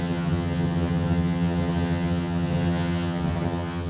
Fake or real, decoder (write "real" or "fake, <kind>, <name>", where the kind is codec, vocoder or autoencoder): fake, vocoder, HiFi-GAN